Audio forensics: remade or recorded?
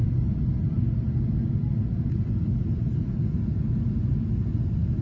recorded